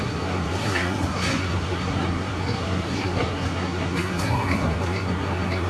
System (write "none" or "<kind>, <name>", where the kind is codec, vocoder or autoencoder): codec, SNAC